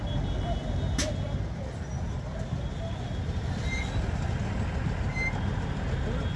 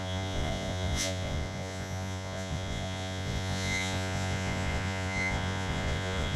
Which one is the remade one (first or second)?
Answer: second